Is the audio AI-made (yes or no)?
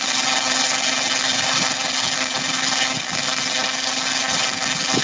no